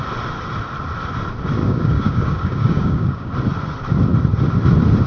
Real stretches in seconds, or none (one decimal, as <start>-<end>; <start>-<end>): 0.0-1.6; 3.3-5.1

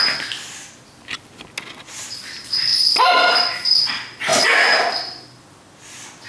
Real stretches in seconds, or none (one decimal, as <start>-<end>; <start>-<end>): 0.0-2.7; 3.9-6.3

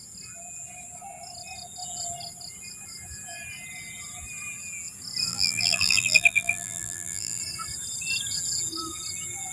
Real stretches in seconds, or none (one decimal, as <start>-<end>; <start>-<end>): 0.0-5.3; 7.4-9.5

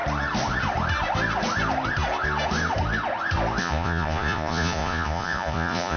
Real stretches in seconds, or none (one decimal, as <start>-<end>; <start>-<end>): 0.0-3.6